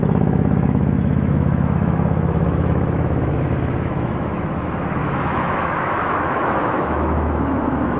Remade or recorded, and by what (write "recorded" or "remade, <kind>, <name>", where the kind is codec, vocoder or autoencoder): remade, autoencoder, DAC-VAE